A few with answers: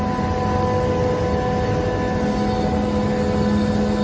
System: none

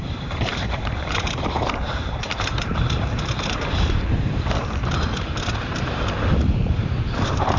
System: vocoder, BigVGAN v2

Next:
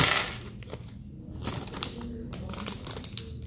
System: none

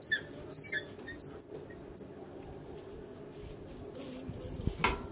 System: none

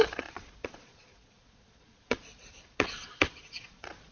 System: vocoder, Vocos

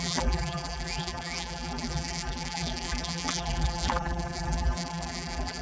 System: vocoder, BigVGAN v2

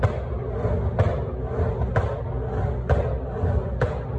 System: none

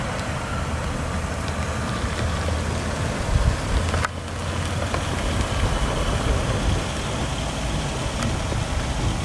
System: none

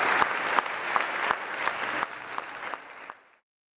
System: none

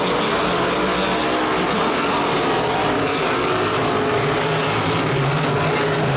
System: none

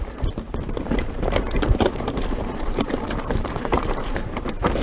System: vocoder, BigVGAN v2